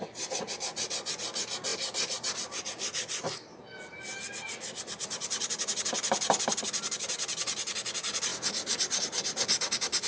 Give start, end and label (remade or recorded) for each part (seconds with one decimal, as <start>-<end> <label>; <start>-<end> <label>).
0.0-10.1 recorded